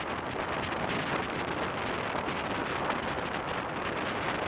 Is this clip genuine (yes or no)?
yes